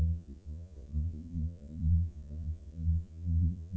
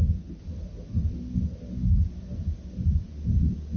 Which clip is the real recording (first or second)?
second